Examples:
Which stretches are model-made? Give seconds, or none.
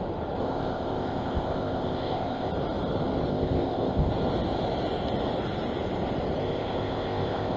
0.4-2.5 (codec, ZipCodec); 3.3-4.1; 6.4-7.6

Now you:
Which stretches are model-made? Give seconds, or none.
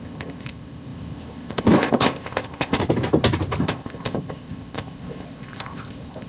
0.0-2.8 (codec, ZipCodec); 3.6-6.3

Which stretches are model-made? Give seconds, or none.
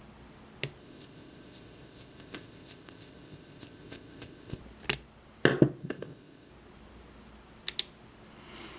0.8-4.6 (codec, ZipCodec); 5.8-6.5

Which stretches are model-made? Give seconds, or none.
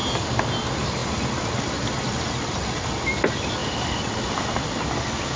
none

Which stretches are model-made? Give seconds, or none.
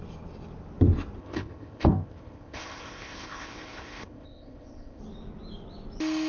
1.2-5.0 (codec, ZipCodec)